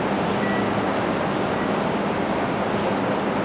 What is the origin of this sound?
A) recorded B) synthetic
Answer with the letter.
A